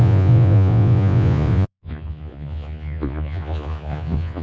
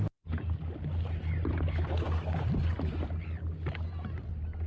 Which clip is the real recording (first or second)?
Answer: second